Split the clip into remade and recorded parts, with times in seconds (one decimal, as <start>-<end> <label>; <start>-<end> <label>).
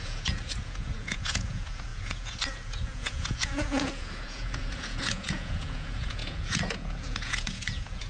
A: 0.0-8.1 remade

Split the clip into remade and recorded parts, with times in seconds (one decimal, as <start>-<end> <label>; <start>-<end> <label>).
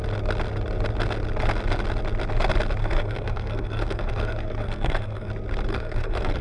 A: 0.0-2.8 recorded; 2.8-5.3 remade; 5.3-5.7 recorded; 5.7-6.4 remade